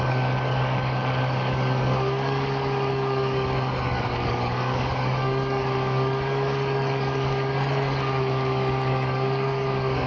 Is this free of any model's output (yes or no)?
no